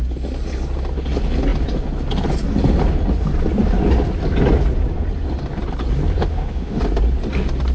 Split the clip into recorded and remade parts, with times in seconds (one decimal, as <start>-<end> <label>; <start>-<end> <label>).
0.0-6.3 recorded; 6.3-6.8 remade; 6.8-7.7 recorded

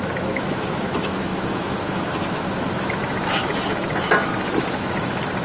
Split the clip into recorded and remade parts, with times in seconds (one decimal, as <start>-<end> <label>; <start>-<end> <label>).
0.0-4.3 remade; 4.3-4.8 recorded; 4.8-5.4 remade